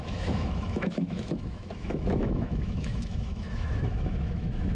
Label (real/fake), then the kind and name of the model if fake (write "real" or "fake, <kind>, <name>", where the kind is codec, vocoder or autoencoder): fake, autoencoder, DAC-VAE